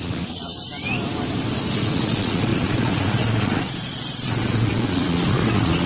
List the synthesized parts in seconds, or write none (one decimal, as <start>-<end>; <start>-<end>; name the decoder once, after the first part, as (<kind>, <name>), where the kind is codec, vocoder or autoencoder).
0.0-0.6 (vocoder, Vocos); 1.7-5.9